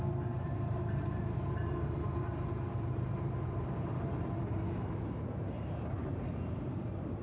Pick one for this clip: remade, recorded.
remade